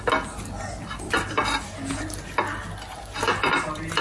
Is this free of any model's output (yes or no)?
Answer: yes